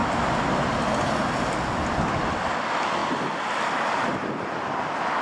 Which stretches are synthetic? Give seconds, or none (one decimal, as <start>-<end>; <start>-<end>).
none